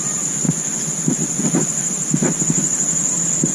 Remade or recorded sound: recorded